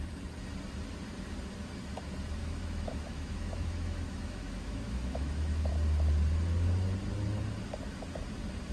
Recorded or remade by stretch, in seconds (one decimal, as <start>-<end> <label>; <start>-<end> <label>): 0.0-2.4 recorded; 2.4-5.7 remade; 5.7-8.7 recorded